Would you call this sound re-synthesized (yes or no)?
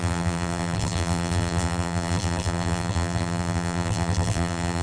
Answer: yes